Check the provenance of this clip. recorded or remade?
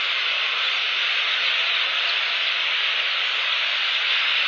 remade